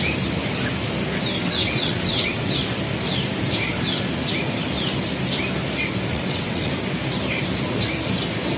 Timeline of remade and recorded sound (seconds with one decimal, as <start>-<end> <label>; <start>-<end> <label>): 0.0-1.4 recorded; 1.4-2.5 remade; 2.5-6.1 recorded; 6.1-6.7 remade; 6.7-8.6 recorded